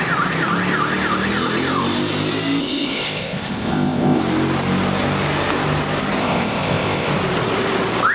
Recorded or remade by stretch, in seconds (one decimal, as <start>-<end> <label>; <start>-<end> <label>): 0.0-2.6 recorded; 2.6-4.2 remade; 4.2-6.2 recorded; 6.2-7.1 remade; 7.1-8.1 recorded